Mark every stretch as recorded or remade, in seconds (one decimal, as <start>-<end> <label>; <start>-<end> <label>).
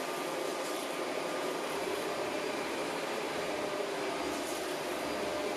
0.0-0.5 recorded; 0.5-3.9 remade; 3.9-5.6 recorded